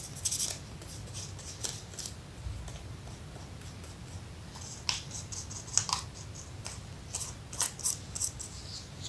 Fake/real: real